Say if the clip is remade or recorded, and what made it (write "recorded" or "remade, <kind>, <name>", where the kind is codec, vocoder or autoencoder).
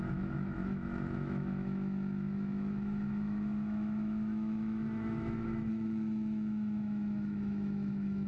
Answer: remade, autoencoder, DAC-VAE